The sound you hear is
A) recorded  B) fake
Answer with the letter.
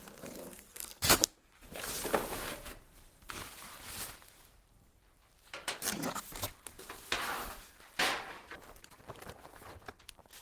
B